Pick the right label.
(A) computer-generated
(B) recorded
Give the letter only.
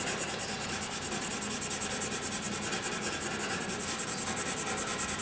B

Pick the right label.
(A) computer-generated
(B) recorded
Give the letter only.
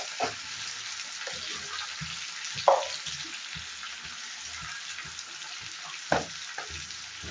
B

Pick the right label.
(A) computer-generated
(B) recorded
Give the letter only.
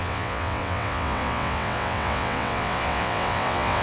A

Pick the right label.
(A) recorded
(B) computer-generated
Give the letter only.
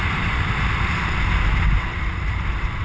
A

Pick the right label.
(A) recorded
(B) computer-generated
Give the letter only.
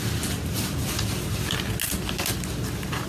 A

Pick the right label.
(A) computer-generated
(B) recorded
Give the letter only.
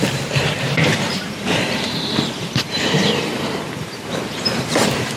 A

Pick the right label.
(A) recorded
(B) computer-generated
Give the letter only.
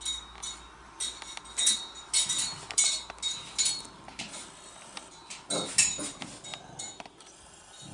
A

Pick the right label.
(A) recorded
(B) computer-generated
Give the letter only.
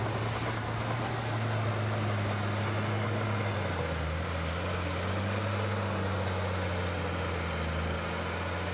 A